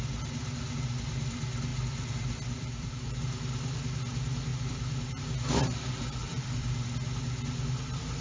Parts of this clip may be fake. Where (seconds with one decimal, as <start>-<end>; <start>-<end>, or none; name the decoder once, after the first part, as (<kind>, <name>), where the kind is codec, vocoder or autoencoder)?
1.7-3.2 (vocoder, BigVGAN v2); 4.5-5.2; 6.2-6.8